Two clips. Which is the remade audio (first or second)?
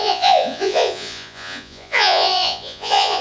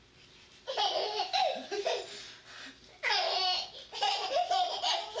first